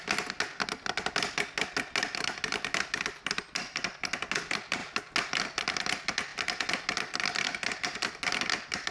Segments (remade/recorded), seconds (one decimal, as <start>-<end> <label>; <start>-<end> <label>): 0.0-8.9 recorded